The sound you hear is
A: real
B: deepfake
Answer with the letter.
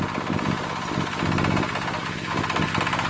A